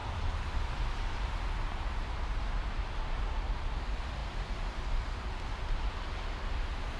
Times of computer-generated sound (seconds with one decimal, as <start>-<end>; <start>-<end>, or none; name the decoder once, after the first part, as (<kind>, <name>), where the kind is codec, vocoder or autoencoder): 0.0-1.3 (vocoder, BigVGAN v2)